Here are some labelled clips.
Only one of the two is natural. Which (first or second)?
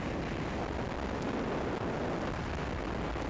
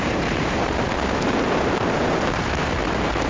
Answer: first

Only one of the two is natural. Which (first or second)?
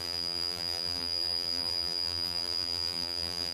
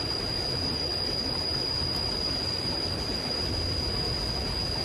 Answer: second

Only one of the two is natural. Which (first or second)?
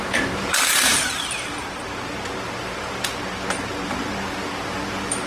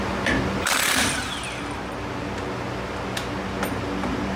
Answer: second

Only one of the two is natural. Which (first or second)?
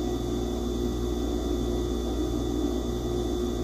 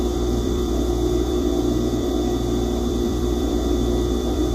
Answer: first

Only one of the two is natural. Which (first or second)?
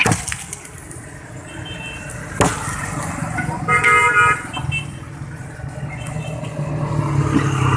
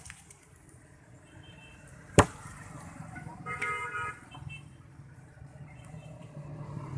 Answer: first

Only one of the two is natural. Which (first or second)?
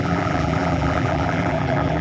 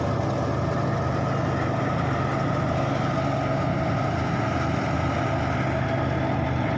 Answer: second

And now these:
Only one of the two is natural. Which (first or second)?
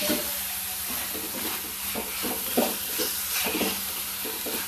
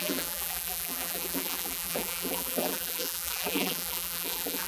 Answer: first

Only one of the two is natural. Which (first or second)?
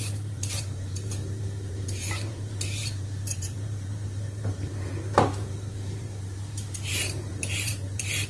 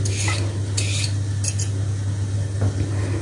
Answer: second